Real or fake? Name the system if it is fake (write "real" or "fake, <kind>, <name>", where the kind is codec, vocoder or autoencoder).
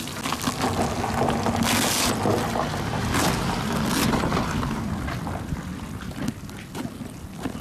real